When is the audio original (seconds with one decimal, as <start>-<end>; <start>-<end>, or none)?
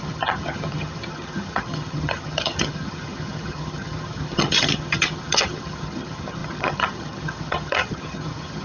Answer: none